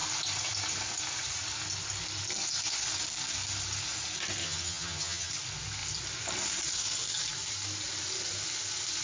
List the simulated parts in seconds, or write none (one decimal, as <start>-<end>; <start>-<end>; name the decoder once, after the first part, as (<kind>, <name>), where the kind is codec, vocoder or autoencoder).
4.4-5.3 (vocoder, HiFi-GAN)

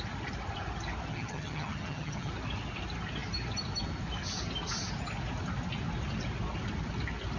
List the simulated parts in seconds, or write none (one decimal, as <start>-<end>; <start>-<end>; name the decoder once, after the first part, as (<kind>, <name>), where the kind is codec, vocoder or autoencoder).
1.1-2.3 (vocoder, HiFi-GAN)

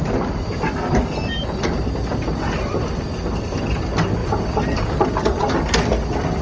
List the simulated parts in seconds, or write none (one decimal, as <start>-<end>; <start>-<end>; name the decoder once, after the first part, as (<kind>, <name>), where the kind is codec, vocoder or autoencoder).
none

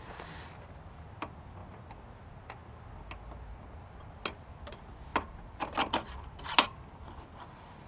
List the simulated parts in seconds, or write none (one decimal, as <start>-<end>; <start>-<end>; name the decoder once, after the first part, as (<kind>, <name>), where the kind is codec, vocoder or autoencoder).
none

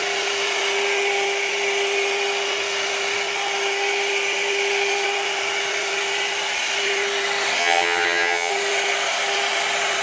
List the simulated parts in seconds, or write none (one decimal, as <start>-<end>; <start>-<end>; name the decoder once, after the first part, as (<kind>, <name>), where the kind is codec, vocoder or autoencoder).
7.6-8.5 (vocoder, HiFi-GAN)

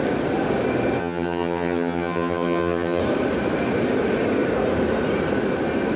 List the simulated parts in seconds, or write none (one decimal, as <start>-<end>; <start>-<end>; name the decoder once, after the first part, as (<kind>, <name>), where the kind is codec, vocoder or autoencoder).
1.0-3.0 (vocoder, HiFi-GAN)

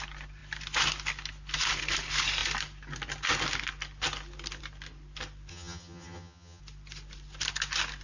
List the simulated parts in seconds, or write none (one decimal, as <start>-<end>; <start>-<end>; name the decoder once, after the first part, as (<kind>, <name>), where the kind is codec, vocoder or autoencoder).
5.5-6.6 (vocoder, HiFi-GAN)